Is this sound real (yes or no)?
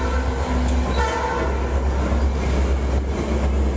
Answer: yes